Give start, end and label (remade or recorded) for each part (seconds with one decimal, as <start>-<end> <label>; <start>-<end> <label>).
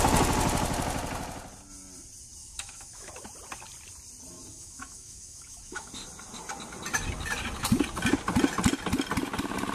0.0-2.4 recorded; 2.4-3.1 remade; 3.1-4.5 recorded; 4.5-5.9 remade; 5.9-9.7 recorded